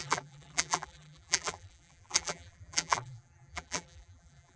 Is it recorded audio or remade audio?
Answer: remade